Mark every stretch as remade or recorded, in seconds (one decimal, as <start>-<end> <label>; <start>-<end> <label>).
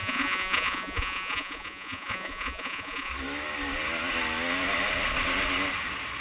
0.0-3.1 remade; 3.1-6.2 recorded